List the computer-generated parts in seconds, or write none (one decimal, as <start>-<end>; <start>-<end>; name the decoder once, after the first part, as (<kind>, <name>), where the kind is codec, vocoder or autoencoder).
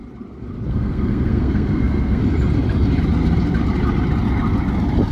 0.7-2.2 (codec, SNAC)